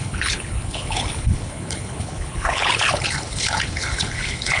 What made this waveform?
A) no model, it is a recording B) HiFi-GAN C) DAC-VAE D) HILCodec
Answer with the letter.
D